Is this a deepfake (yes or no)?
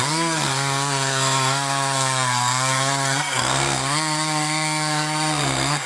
yes